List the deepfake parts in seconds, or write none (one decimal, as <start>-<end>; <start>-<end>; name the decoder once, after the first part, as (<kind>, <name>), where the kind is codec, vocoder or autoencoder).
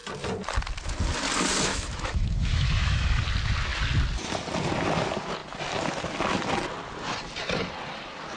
1.7-3.2 (autoencoder, DAC-VAE)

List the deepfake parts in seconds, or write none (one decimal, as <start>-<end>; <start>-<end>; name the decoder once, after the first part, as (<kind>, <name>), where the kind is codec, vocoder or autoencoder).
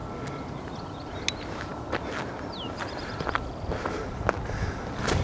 none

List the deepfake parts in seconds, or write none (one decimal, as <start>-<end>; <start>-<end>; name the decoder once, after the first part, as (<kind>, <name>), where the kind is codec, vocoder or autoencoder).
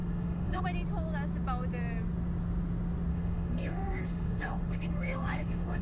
0.0-0.6 (autoencoder, DAC-VAE); 3.1-5.8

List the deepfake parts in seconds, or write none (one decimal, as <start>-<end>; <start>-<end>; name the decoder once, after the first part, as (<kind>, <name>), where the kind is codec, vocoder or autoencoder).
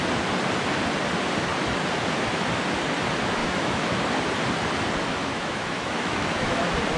3.4-4.0 (autoencoder, DAC-VAE); 5.2-6.6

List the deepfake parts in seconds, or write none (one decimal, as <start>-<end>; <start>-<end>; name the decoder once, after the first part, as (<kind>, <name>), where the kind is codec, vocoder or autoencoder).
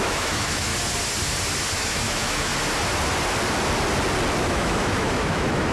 0.0-0.7 (autoencoder, DAC-VAE); 1.7-2.5; 4.4-5.7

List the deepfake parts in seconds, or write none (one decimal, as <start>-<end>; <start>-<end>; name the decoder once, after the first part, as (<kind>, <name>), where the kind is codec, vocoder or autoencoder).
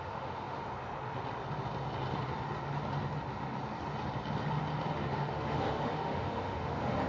0.0-0.6 (autoencoder, DAC-VAE); 4.9-7.1